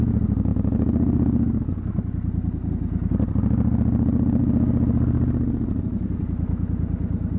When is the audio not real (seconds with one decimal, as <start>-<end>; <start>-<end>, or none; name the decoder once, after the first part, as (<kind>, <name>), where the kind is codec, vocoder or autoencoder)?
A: none